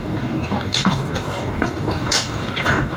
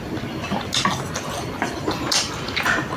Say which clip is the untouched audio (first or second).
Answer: second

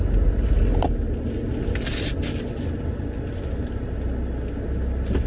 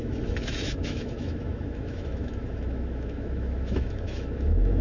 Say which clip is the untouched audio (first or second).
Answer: first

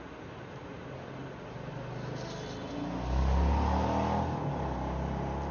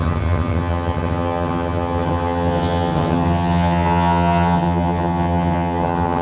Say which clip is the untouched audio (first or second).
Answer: first